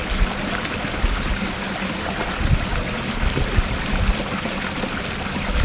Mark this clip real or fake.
real